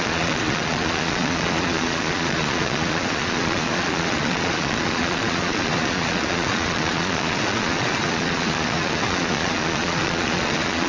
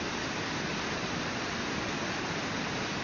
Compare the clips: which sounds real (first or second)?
second